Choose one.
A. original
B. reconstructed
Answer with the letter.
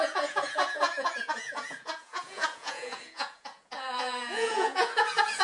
B